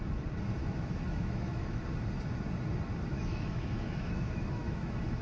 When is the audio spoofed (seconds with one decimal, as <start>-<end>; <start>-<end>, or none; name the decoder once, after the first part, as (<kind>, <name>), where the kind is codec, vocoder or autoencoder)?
0.6-1.8 (autoencoder, DAC-VAE); 3.1-5.2

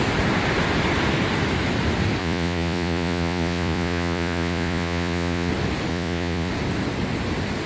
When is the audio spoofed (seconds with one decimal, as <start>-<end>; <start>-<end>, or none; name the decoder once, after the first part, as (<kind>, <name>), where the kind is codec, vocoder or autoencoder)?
2.2-5.5 (vocoder, Vocos); 5.9-6.5

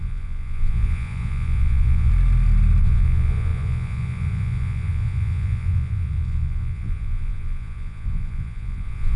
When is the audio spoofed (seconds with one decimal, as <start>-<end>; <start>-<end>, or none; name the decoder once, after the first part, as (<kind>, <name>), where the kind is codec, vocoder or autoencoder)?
0.0-2.1 (vocoder, Vocos); 2.8-9.2

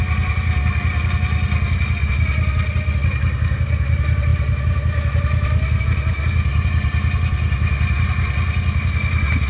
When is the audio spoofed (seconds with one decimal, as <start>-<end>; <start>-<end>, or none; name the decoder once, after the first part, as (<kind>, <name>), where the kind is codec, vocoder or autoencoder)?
none

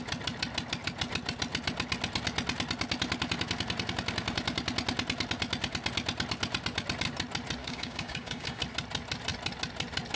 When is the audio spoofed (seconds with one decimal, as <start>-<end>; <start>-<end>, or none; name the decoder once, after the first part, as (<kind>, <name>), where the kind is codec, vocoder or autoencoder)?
7.6-8.6 (codec, DAC)

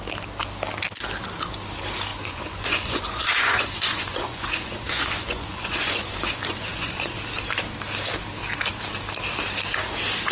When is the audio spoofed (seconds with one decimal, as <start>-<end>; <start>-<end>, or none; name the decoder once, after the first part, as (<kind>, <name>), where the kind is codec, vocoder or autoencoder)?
2.1-7.2 (vocoder, Vocos)

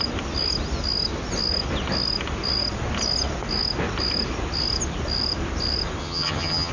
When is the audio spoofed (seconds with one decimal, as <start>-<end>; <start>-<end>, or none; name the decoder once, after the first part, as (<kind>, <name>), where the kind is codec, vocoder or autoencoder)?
6.0-6.7 (vocoder, HiFi-GAN)